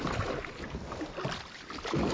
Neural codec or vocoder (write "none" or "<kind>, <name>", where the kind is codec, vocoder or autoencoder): vocoder, BigVGAN v2